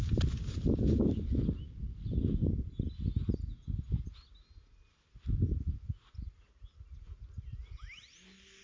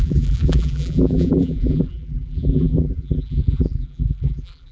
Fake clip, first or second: second